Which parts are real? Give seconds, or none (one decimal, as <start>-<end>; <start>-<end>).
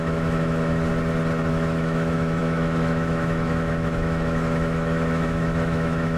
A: 0.9-1.5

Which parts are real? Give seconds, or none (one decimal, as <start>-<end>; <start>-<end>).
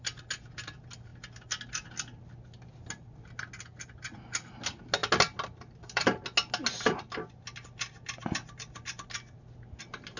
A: 0.0-10.2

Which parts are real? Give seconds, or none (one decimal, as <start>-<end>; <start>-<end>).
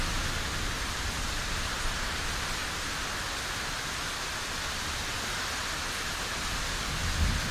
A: 0.0-7.5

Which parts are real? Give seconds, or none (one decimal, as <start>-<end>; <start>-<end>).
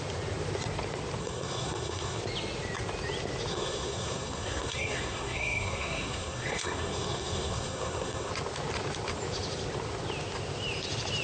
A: 0.0-1.2; 2.2-3.5; 8.3-11.2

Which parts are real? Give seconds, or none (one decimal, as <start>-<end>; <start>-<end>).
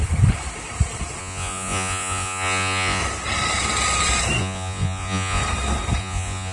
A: 0.0-1.2; 3.0-4.4; 5.4-6.0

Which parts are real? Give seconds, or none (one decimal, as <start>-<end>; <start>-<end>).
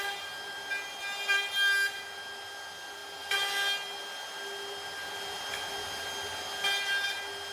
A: 0.0-7.5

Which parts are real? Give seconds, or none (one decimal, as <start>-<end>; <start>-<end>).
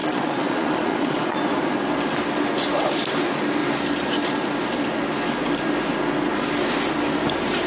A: 1.4-7.7